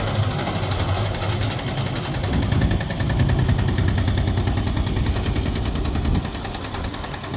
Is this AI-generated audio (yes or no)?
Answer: no